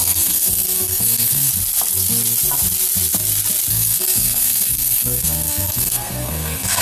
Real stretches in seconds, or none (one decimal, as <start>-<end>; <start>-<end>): 1.5-3.7